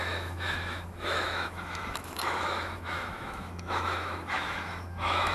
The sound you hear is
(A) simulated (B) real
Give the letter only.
A